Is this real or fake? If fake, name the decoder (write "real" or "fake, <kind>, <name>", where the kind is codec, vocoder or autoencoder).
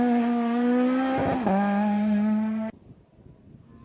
real